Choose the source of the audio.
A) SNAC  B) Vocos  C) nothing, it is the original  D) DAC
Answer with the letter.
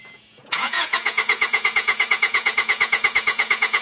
B